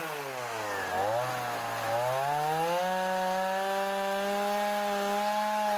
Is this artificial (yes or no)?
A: no